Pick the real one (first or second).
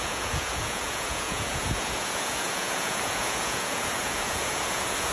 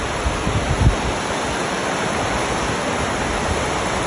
second